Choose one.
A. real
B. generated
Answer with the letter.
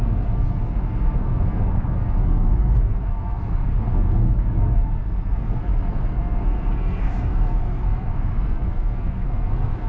B